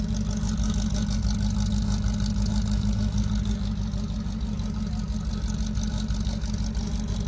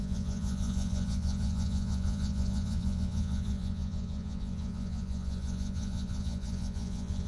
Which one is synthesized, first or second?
second